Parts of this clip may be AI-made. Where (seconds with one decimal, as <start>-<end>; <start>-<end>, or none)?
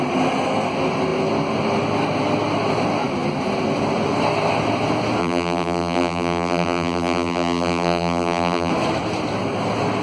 5.2-8.7